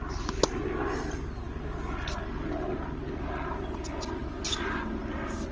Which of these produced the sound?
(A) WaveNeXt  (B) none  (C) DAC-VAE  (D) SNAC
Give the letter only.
B